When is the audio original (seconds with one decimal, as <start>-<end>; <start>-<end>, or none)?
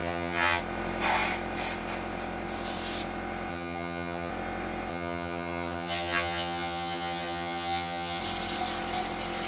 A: 0.6-3.5; 4.3-4.9; 8.2-9.5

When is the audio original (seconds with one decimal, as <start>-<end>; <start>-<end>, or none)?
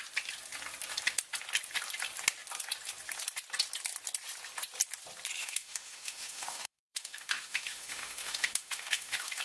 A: 0.0-5.4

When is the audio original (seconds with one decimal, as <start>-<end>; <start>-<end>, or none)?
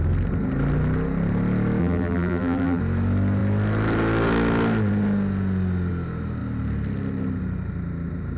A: 0.0-1.8; 2.8-8.4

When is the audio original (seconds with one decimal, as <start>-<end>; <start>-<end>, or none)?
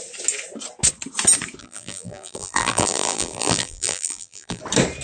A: 0.0-1.6; 4.6-5.0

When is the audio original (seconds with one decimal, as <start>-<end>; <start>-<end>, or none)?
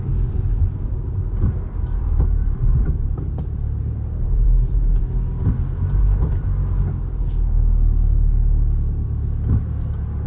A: 0.0-0.6; 5.0-10.3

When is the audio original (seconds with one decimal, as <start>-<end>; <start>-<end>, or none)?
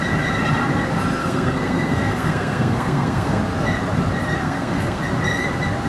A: 0.0-1.2; 3.4-4.4; 5.0-5.9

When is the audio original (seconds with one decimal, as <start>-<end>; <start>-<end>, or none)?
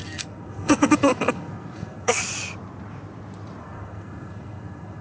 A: 2.2-3.6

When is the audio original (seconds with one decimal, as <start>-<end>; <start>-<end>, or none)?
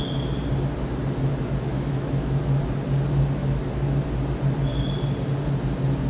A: 0.0-1.7; 2.4-6.1